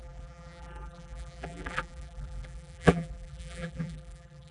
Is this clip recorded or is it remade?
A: remade